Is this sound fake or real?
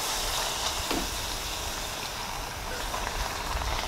real